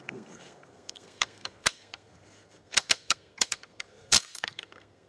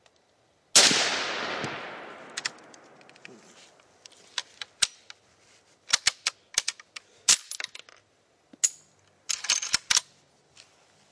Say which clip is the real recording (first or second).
second